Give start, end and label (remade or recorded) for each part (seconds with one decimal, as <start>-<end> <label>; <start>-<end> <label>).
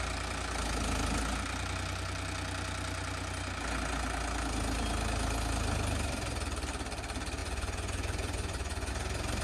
0.0-7.4 recorded; 7.4-8.9 remade; 8.9-9.4 recorded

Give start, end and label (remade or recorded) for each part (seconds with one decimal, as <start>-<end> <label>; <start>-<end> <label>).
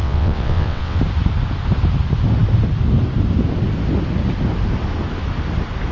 0.0-1.0 remade; 1.0-5.9 recorded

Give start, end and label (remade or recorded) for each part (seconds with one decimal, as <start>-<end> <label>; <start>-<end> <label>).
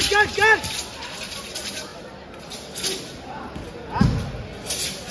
0.0-5.1 recorded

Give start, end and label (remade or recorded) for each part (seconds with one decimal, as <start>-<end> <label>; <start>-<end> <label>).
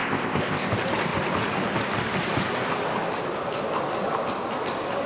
0.0-0.7 remade; 0.7-5.1 recorded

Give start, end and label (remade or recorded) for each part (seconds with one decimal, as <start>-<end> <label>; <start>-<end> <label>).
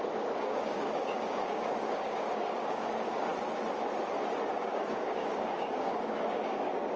0.0-3.3 remade; 3.3-4.5 recorded; 4.5-7.0 remade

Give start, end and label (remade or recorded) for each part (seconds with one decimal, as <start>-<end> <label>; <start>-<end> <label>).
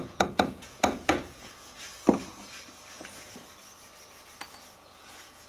0.0-1.9 remade; 1.9-2.9 recorded; 2.9-3.4 remade; 3.4-4.5 recorded; 4.5-5.5 remade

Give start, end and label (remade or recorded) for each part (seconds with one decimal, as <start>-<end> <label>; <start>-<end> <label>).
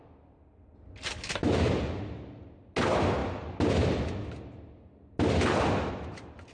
0.0-6.5 recorded